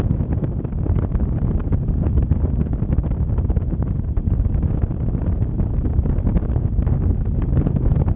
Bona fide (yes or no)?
yes